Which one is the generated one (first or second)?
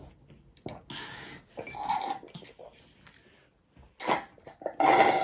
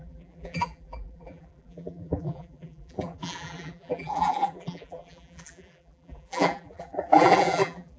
second